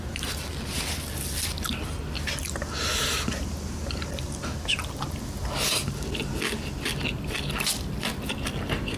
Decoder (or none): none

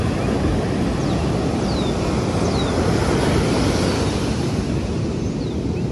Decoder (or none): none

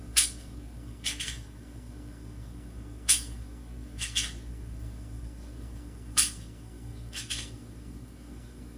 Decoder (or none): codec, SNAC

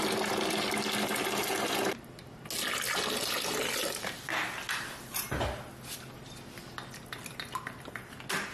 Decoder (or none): none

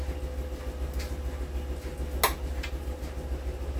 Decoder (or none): none